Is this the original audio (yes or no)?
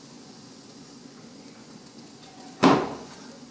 no